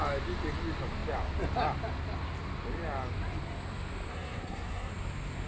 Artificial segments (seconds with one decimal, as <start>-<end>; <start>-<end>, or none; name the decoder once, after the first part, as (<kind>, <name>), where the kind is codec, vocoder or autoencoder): 4.1-4.9 (codec, SNAC)